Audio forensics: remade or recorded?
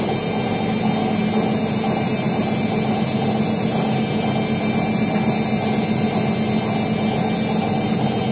recorded